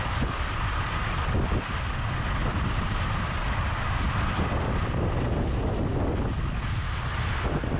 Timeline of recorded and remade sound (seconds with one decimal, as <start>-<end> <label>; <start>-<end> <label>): 0.0-2.4 recorded; 2.4-3.6 remade; 3.6-7.8 recorded